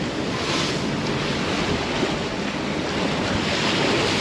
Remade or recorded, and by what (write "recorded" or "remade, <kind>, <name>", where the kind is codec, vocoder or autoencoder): recorded